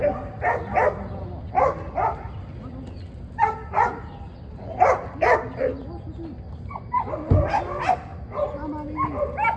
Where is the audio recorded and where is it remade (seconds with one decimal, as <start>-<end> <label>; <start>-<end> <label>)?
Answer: 0.0-9.6 recorded